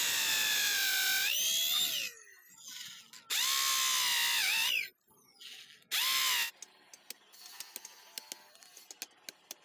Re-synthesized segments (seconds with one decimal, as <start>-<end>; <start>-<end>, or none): none